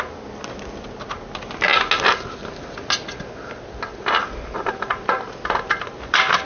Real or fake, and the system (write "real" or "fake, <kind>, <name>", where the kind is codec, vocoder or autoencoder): real